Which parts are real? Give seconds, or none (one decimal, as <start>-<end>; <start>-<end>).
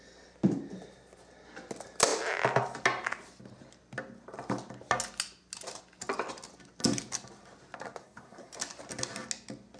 0.0-8.0; 8.5-9.8